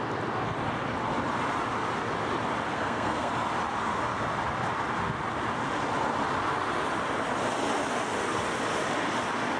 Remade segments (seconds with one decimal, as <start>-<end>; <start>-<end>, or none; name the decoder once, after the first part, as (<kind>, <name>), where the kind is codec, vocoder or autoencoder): 2.7-3.3 (codec, SNAC)

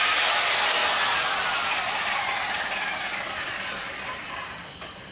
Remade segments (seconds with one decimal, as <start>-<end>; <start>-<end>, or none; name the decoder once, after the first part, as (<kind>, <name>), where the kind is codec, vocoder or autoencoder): none